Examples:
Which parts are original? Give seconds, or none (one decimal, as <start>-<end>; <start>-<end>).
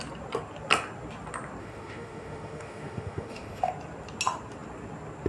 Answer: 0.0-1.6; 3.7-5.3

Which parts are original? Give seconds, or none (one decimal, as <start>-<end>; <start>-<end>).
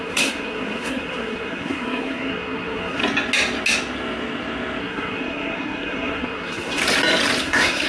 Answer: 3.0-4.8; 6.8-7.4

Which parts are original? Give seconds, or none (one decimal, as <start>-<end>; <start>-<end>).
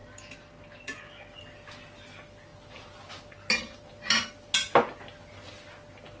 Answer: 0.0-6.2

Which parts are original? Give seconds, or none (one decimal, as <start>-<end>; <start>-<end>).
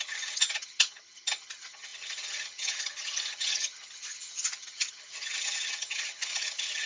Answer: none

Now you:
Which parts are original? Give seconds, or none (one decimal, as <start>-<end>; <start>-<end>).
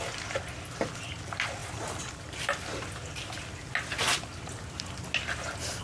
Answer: 0.0-5.8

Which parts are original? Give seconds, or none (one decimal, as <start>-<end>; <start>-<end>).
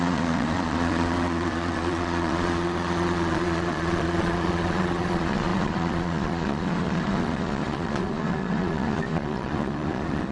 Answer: none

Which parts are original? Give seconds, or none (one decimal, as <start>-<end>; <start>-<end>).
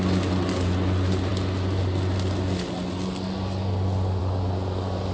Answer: 0.0-5.1